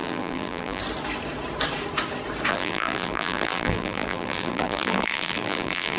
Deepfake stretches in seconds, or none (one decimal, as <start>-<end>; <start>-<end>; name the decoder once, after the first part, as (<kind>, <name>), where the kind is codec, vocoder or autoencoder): 0.0-0.8 (vocoder, BigVGAN v2); 2.5-6.0